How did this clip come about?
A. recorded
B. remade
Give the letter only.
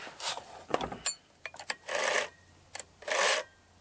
A